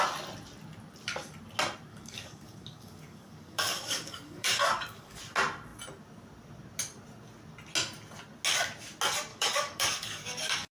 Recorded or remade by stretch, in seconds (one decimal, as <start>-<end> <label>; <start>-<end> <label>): 0.0-1.9 recorded; 1.9-5.2 remade; 5.2-9.3 recorded; 9.3-10.7 remade